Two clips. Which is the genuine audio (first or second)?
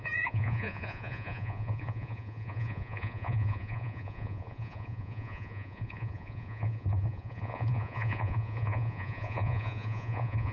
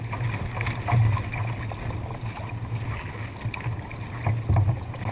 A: second